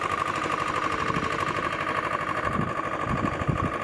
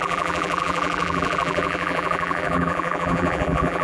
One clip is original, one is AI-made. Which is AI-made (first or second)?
second